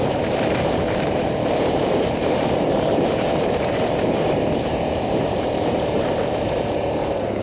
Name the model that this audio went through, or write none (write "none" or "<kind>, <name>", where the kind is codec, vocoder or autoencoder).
vocoder, BigVGAN v2